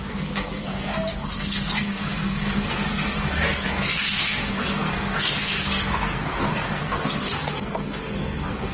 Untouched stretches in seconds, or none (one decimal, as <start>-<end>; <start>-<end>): none